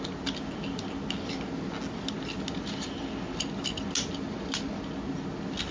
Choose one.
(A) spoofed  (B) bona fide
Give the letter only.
B